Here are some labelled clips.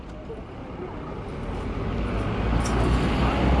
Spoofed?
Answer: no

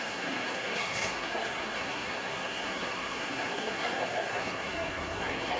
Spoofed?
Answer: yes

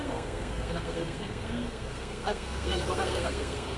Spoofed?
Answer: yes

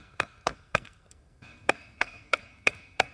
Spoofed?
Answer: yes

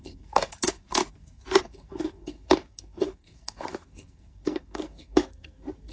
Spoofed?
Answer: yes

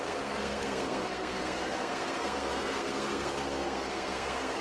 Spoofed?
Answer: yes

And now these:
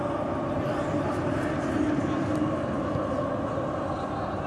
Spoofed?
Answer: no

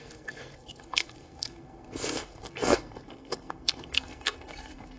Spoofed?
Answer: yes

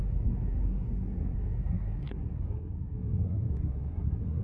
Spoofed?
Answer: yes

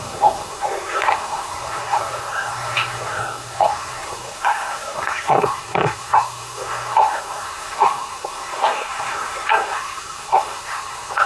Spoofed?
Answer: yes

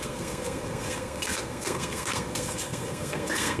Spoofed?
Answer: yes